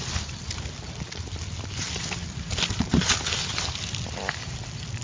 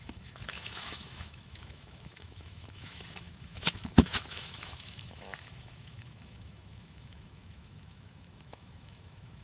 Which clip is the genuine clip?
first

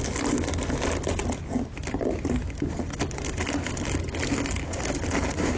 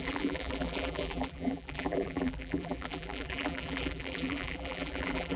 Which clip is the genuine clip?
first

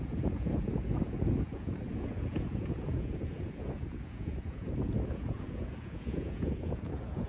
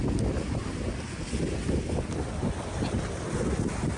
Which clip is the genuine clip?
second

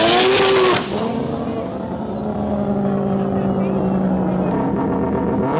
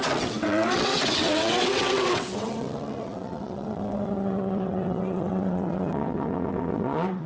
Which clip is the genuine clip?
first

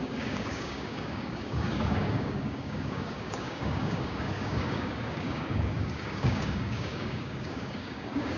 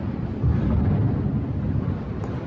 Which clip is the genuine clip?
second